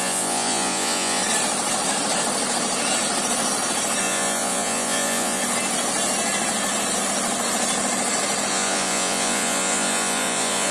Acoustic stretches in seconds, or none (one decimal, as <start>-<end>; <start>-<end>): 1.2-4.0; 5.4-8.5